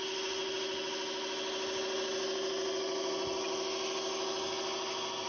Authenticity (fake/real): real